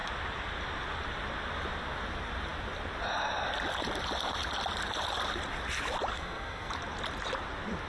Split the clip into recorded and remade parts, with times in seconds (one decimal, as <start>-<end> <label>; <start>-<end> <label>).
0.0-6.1 recorded; 6.1-6.7 remade; 6.7-7.9 recorded